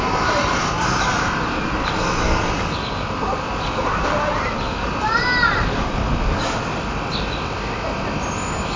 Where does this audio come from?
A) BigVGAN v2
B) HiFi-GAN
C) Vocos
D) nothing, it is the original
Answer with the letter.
D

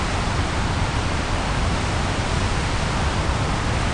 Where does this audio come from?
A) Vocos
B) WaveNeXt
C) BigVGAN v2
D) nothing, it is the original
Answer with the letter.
D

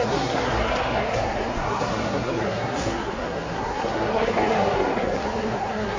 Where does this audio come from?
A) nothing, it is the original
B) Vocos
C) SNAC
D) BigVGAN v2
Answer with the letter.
C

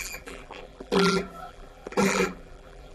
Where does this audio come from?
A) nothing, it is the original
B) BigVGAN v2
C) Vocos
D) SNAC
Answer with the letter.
B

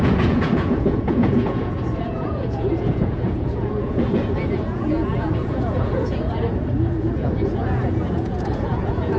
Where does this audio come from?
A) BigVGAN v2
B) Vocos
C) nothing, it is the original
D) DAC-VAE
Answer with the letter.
B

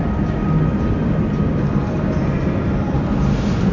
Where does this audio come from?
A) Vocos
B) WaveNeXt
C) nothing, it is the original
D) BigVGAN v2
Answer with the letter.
C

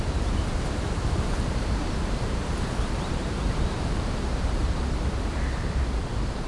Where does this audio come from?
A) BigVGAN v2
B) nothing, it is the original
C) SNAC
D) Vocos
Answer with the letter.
A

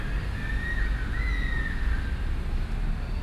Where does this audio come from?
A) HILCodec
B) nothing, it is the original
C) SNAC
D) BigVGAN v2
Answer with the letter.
B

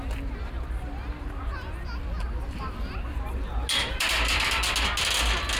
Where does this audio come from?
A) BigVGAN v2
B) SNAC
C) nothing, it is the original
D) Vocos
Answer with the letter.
C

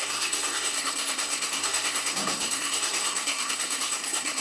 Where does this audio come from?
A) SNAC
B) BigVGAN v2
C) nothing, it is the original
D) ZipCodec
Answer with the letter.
A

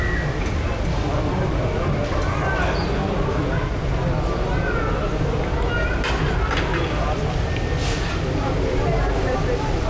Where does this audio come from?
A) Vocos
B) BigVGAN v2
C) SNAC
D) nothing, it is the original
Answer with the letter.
D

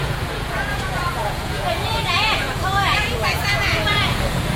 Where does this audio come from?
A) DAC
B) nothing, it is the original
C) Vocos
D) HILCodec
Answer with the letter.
C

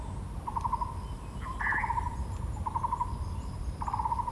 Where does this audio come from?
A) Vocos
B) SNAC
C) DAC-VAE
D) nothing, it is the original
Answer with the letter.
D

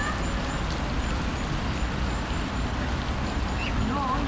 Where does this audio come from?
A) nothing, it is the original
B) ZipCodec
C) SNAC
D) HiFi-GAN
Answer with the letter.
A